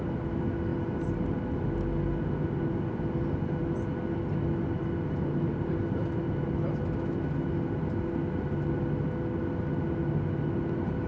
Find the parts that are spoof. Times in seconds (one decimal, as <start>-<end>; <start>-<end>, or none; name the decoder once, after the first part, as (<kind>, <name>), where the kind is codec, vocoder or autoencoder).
none